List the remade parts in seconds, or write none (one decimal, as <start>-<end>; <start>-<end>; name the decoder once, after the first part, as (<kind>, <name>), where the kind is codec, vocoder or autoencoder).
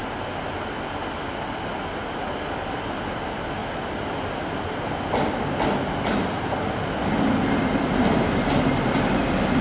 none